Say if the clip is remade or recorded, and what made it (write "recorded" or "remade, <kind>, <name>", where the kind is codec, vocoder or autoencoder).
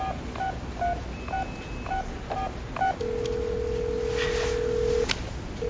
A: recorded